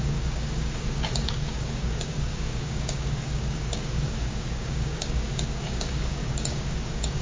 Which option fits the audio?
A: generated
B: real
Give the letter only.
A